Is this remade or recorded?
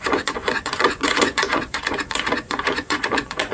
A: remade